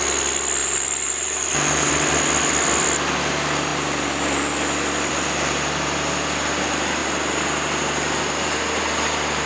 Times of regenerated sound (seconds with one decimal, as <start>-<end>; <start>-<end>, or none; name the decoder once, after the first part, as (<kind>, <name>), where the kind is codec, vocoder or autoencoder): 0.6-1.9 (vocoder, BigVGAN v2); 7.0-8.8